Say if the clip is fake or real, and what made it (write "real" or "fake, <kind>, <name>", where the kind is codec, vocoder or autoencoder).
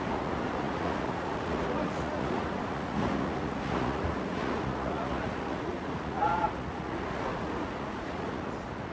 fake, vocoder, Vocos